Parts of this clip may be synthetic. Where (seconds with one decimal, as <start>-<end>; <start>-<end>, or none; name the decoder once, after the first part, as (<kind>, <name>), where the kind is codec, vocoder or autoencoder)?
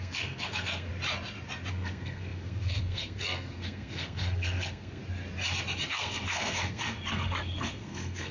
0.0-0.9 (codec, SNAC); 1.7-5.0; 5.9-8.3